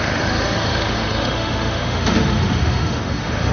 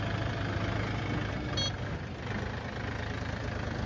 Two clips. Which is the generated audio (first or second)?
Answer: first